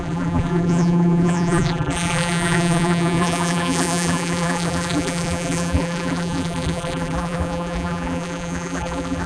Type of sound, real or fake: fake